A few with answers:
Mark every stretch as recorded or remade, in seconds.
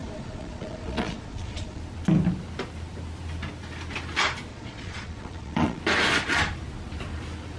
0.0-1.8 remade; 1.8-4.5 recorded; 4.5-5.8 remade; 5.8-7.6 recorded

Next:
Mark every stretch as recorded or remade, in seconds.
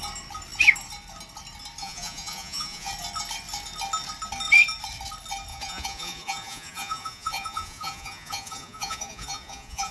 0.0-1.8 recorded; 1.8-2.9 remade; 2.9-5.5 recorded; 5.5-9.9 remade